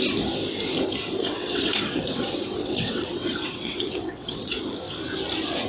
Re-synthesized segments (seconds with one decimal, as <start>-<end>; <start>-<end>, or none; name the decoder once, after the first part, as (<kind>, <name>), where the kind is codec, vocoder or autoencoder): 1.2-4.6 (vocoder, WaveNeXt)